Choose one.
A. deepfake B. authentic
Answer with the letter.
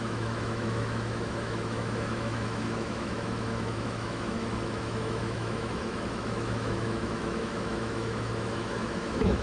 A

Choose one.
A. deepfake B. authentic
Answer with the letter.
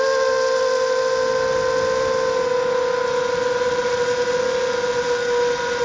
B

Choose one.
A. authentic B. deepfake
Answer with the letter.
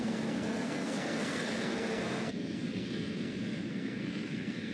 B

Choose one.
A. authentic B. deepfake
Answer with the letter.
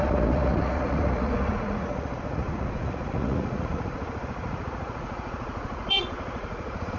B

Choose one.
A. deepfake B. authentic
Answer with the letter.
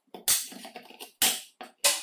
B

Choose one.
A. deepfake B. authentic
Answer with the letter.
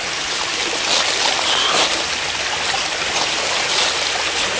B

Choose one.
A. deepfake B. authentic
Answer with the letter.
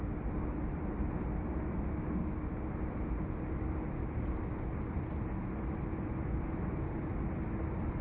B